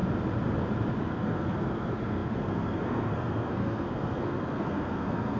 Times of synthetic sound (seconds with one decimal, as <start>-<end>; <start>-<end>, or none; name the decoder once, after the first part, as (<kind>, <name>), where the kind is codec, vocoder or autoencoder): 1.0-5.4 (codec, SNAC)